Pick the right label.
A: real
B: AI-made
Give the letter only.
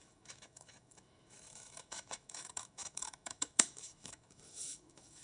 B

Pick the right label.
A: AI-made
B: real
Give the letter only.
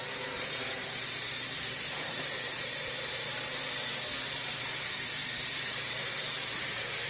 A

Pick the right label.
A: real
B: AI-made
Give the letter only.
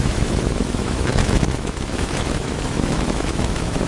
B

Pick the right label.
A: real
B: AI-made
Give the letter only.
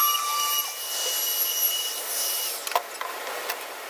A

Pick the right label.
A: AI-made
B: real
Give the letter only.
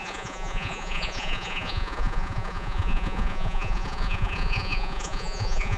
A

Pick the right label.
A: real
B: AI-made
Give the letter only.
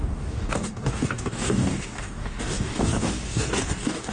B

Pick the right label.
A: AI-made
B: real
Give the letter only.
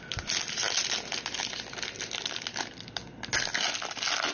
B